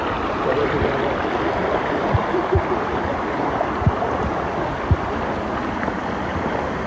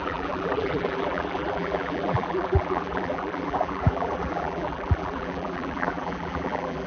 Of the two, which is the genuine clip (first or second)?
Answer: first